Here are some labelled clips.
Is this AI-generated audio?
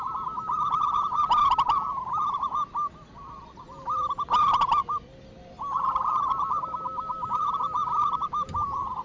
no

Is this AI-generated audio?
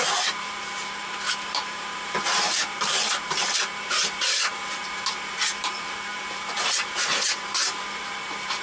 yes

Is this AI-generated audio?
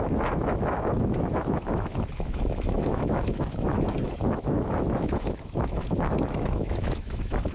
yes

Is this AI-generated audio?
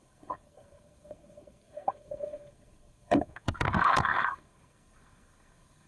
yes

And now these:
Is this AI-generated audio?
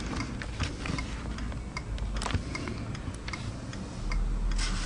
no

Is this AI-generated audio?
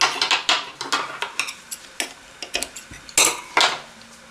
no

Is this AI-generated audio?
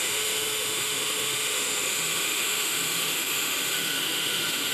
yes